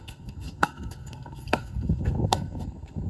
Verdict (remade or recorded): remade